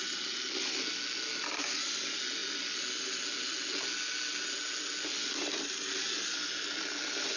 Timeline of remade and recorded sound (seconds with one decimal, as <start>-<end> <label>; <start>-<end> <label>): 0.0-7.4 recorded